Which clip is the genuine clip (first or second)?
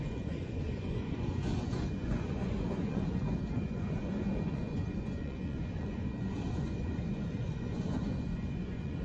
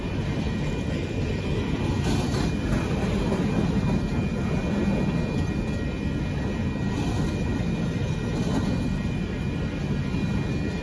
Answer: second